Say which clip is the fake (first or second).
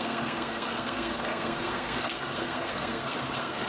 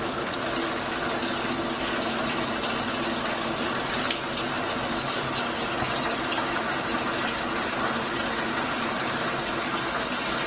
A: first